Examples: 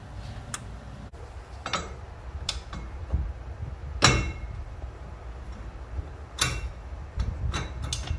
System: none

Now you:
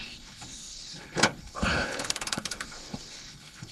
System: codec, HILCodec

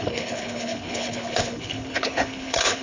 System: codec, HILCodec